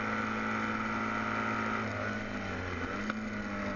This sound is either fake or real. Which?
real